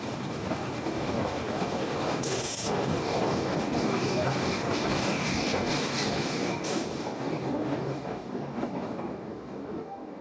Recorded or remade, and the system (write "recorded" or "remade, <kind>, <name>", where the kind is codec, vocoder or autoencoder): remade, codec, DAC